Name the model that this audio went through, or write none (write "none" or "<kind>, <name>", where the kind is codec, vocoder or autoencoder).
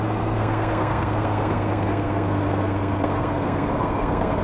codec, SNAC